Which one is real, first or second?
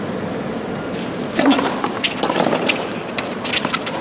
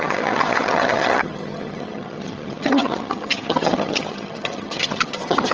first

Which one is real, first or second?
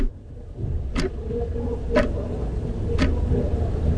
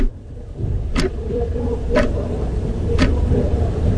first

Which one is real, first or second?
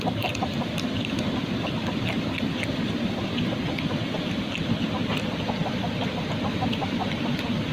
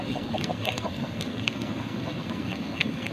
first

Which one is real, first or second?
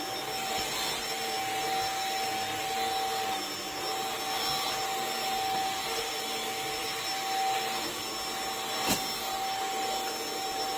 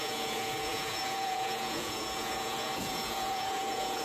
first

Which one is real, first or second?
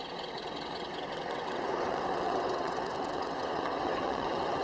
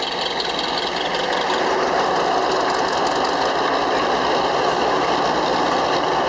second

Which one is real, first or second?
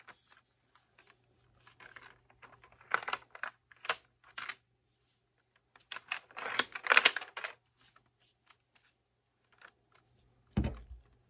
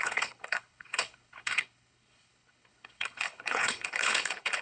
first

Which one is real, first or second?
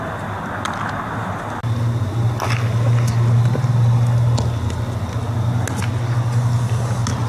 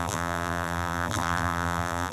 first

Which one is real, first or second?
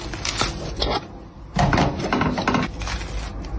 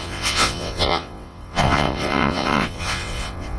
first